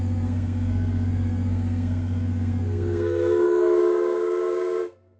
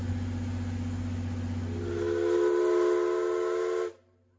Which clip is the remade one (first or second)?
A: first